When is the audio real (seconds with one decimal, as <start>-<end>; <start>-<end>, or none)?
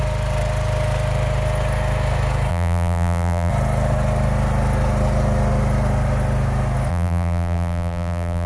0.0-2.5; 3.5-6.9